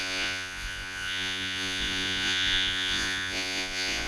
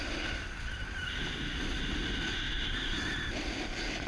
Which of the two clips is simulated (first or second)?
first